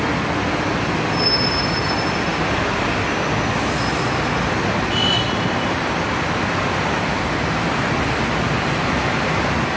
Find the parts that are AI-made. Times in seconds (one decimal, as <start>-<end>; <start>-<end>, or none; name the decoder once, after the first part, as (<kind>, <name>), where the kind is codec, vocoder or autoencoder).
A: none